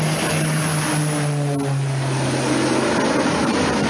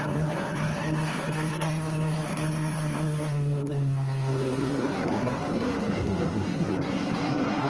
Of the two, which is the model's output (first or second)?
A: second